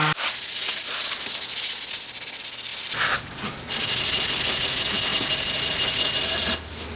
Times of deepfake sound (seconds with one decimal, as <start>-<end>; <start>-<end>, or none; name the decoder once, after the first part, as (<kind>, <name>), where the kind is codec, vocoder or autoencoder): none